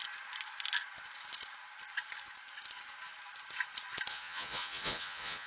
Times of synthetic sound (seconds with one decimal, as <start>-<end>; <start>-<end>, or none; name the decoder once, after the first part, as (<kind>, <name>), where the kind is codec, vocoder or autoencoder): 4.1-5.5 (vocoder, Vocos)